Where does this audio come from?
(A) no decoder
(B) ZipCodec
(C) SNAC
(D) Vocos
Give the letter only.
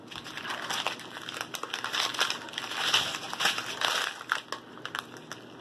A